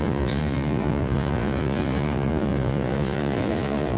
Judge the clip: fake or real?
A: fake